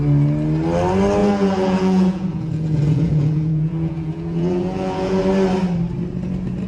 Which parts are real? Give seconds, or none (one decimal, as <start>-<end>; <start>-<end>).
0.0-1.2; 5.2-6.7